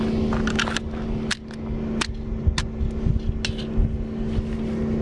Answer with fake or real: real